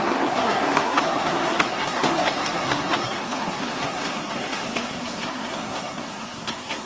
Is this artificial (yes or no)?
yes